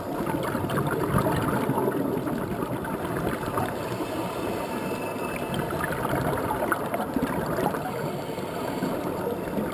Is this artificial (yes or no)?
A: no